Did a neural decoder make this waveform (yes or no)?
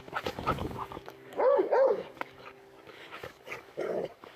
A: yes